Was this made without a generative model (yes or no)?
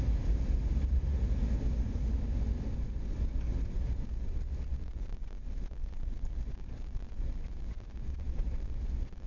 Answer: yes